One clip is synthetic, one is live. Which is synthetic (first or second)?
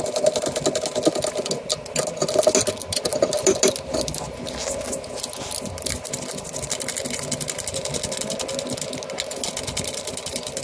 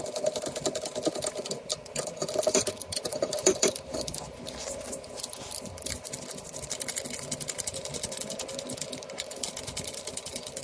second